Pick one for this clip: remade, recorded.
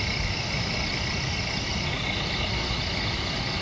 recorded